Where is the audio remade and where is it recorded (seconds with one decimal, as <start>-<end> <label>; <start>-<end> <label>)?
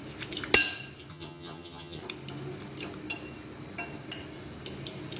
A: 0.0-1.1 recorded; 1.1-2.0 remade; 2.0-5.2 recorded